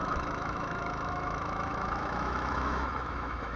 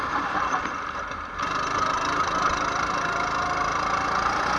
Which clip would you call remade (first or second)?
first